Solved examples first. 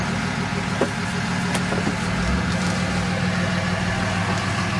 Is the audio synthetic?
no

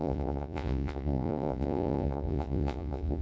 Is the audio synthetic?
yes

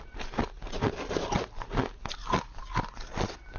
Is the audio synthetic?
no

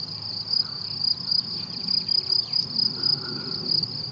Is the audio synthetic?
no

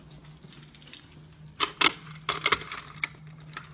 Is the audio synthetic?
no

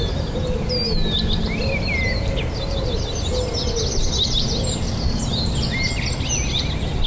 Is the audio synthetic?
no